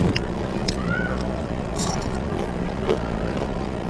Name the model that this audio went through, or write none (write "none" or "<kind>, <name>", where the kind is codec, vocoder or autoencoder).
vocoder, Vocos